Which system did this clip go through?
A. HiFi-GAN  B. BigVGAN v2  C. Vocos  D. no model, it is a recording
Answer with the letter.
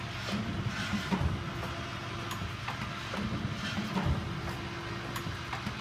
D